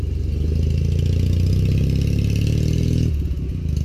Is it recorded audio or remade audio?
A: recorded